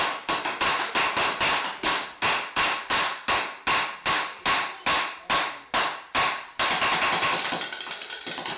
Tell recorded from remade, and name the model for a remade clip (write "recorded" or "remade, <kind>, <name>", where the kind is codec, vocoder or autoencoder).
recorded